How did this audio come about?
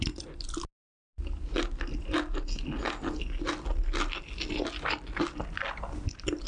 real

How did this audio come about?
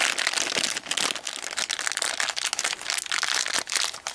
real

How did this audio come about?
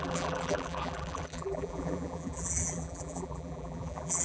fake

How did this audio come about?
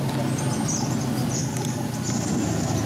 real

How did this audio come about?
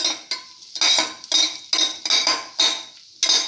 real